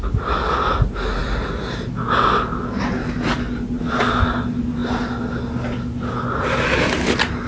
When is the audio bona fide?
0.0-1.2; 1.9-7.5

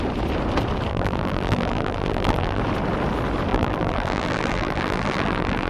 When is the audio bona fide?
0.0-0.9; 2.6-3.5

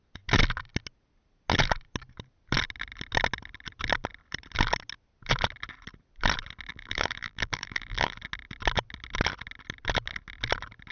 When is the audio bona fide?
0.0-6.7; 8.2-10.9

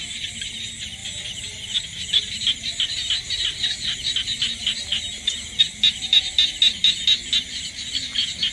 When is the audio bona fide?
0.0-1.0; 5.6-8.5

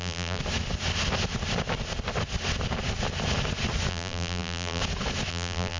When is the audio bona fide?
0.4-3.9; 4.8-5.3

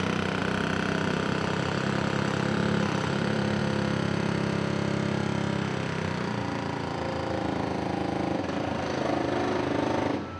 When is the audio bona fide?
0.0-0.4; 3.6-5.7

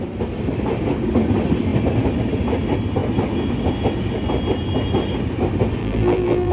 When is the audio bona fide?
0.0-5.8

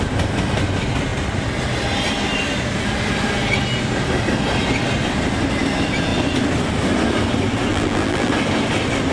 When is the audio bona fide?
0.0-7.7; 8.3-9.1